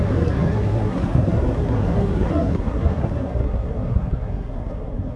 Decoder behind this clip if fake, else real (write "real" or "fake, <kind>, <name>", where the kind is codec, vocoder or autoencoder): fake, codec, SNAC